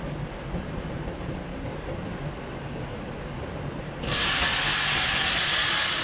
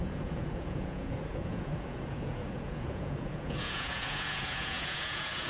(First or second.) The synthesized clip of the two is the second